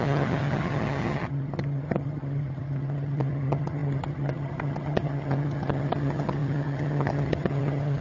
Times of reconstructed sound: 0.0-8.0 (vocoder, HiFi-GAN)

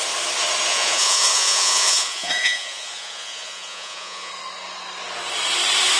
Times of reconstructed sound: 0.7-4.3 (vocoder, Vocos)

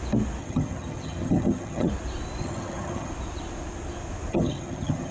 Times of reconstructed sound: 0.4-1.9 (vocoder, HiFi-GAN); 2.4-3.1; 4.3-5.1

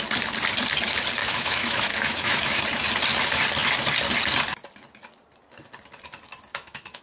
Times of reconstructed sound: 1.2-2.6 (autoencoder, DAC-VAE); 6.5-7.0